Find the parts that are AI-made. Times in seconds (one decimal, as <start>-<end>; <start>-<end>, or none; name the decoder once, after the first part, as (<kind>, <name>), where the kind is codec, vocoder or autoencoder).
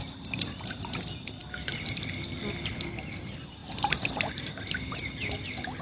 none